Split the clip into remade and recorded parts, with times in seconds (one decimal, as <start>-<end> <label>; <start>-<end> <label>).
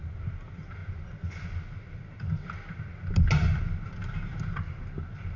0.0-5.4 recorded